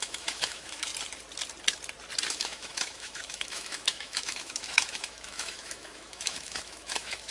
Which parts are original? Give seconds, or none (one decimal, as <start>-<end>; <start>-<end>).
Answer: 0.9-2.3